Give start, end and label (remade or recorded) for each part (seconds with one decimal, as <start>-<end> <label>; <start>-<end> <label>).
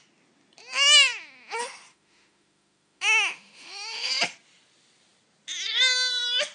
0.0-1.9 recorded; 1.9-4.1 remade; 4.1-6.5 recorded